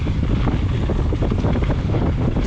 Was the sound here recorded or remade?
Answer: recorded